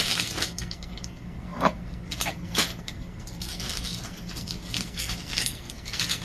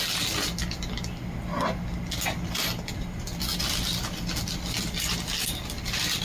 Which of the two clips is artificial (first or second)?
first